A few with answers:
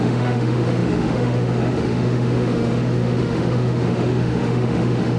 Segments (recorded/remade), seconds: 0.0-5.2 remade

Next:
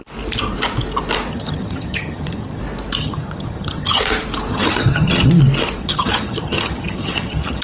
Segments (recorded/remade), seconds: 0.0-1.3 recorded; 1.3-2.6 remade; 2.6-3.0 recorded; 3.0-4.0 remade; 4.0-4.5 recorded; 4.5-5.3 remade; 5.3-5.8 recorded; 5.8-7.6 remade

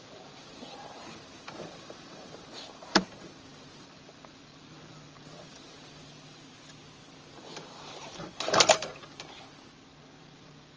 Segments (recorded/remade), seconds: 0.0-6.4 remade; 6.4-7.3 recorded; 7.3-8.9 remade; 8.9-10.2 recorded; 10.2-10.8 remade

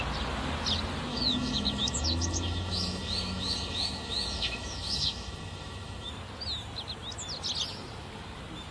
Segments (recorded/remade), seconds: 0.0-1.1 recorded; 1.1-6.1 remade; 6.1-8.7 recorded